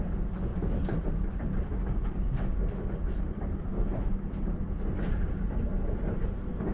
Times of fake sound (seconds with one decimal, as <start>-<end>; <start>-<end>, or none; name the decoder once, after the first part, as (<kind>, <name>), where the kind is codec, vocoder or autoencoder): none